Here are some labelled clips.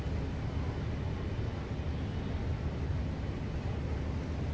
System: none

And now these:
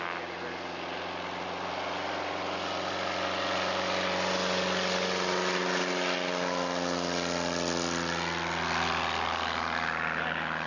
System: none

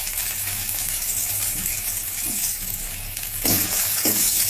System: codec, DAC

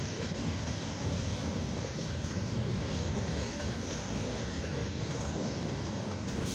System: codec, DAC